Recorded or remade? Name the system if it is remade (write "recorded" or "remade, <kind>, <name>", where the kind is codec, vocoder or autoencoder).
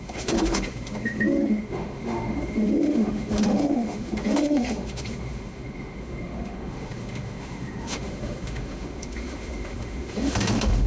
remade, autoencoder, DAC-VAE